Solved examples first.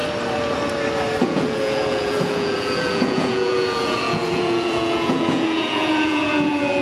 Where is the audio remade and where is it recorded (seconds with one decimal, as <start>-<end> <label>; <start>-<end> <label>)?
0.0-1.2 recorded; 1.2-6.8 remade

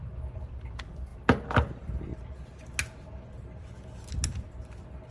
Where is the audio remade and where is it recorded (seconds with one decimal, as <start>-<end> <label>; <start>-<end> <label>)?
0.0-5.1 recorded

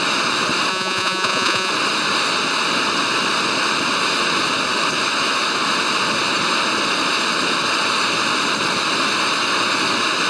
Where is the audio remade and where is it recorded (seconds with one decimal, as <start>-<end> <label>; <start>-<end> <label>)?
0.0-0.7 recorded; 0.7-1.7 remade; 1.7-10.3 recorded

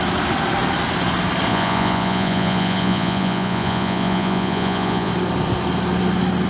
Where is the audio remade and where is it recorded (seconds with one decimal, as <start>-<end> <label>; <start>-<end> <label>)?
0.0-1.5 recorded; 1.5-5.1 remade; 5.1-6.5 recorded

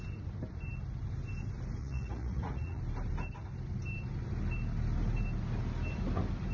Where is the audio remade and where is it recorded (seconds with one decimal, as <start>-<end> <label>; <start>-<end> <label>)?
0.0-1.8 recorded; 1.8-2.8 remade; 2.8-6.5 recorded

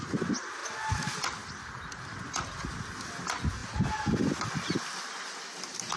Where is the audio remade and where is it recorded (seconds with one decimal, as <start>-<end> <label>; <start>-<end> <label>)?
0.0-6.0 recorded

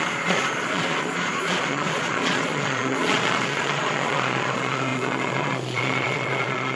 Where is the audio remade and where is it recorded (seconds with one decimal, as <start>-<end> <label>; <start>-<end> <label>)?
0.0-6.8 remade

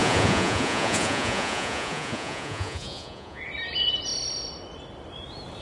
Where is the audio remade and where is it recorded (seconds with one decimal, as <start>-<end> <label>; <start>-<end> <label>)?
0.0-3.4 remade; 3.4-5.6 recorded